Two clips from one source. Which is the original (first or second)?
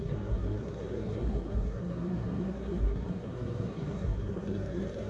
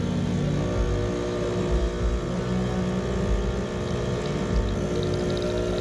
second